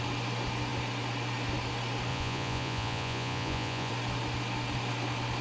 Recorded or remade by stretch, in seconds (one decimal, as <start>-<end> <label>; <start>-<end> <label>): 0.0-2.1 recorded; 2.1-3.9 remade; 3.9-5.4 recorded